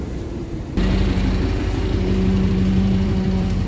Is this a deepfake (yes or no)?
yes